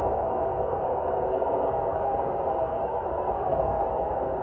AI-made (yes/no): yes